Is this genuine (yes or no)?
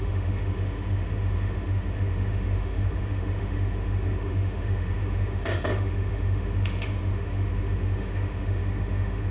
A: no